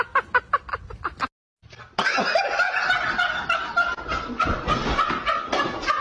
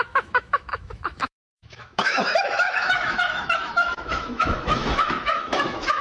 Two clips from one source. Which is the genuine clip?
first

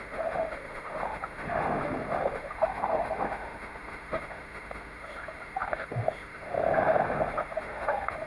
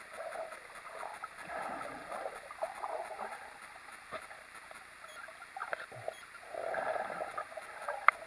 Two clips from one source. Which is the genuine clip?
second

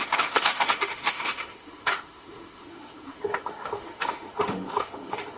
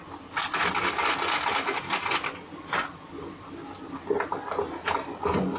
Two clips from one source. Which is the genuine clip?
second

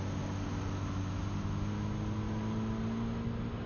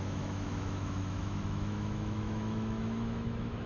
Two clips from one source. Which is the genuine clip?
first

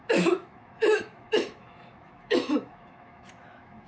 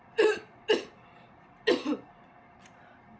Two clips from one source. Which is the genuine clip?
second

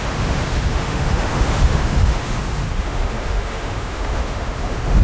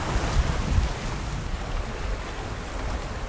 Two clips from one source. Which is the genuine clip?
second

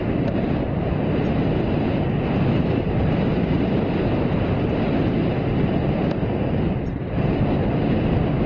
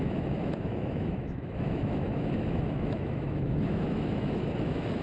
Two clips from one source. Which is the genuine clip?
first